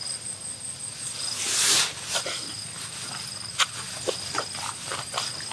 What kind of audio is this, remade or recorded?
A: recorded